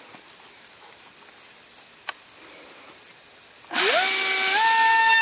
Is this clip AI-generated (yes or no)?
no